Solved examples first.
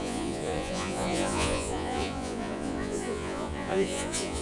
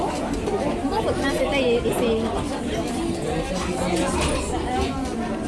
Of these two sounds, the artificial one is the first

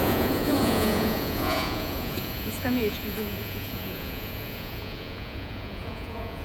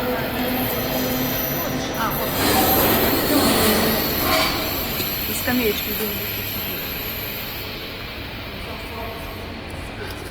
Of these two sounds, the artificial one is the first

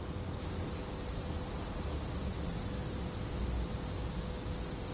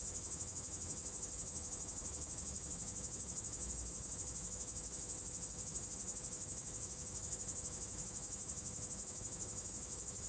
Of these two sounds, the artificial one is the second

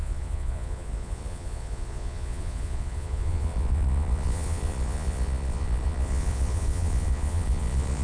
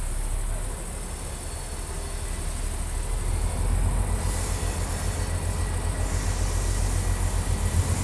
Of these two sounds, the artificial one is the first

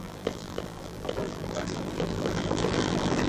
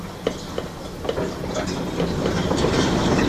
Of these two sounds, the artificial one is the first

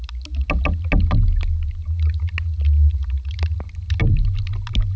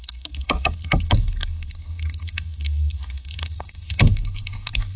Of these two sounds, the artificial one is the second